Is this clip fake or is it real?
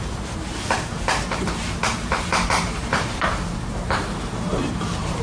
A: fake